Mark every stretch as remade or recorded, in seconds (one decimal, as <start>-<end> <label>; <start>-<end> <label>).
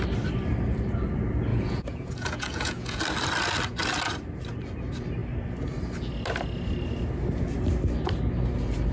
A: 0.0-1.5 recorded; 1.5-3.0 remade; 3.0-8.9 recorded